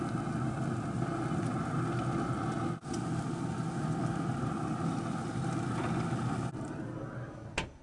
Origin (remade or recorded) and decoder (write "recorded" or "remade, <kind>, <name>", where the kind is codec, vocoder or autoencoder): recorded